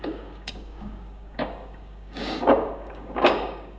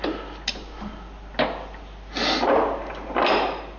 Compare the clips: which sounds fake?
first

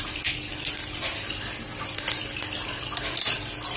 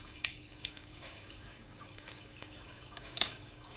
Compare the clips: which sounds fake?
second